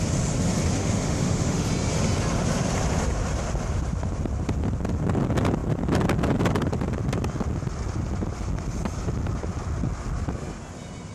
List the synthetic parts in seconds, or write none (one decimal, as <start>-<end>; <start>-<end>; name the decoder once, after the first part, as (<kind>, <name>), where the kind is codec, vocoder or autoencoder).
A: 0.8-1.7 (autoencoder, DAC-VAE)